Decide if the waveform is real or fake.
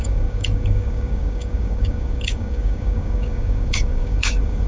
fake